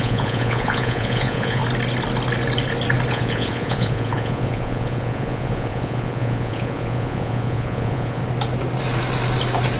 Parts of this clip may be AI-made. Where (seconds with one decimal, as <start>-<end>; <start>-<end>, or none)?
0.0-1.6; 3.1-8.2